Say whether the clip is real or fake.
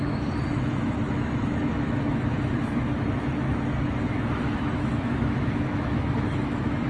fake